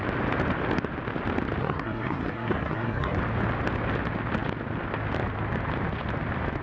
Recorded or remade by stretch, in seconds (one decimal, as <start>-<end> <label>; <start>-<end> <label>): 0.0-1.6 recorded; 1.6-3.2 remade; 3.2-6.6 recorded